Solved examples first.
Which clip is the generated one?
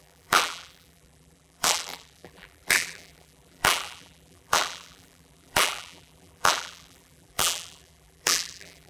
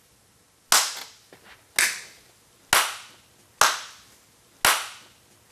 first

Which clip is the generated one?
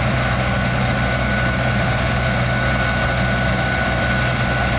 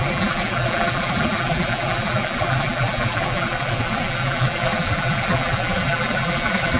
second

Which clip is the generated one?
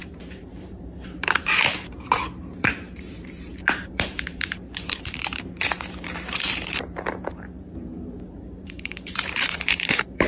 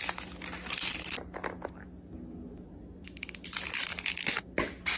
first